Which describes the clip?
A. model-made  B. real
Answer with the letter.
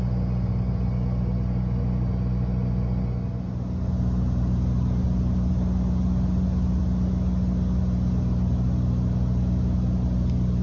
B